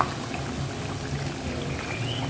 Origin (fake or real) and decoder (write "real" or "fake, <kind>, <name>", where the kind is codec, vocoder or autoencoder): real